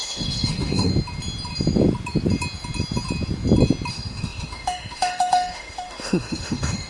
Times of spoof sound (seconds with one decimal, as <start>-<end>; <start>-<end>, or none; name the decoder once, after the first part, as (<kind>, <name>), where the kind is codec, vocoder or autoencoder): 0.0-0.9 (autoencoder, DAC-VAE); 3.9-6.9